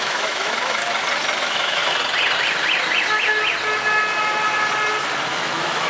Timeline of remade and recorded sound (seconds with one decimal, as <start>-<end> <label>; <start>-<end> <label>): 0.0-0.8 remade; 0.8-1.4 recorded; 1.4-1.8 remade; 1.8-5.3 recorded; 5.3-5.9 remade